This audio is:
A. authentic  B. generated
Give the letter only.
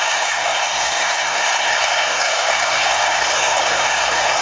B